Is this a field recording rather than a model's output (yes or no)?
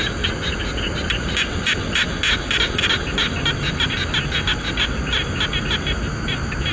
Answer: yes